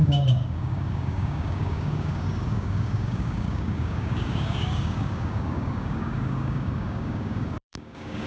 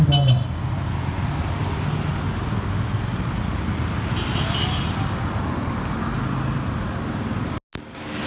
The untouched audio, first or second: second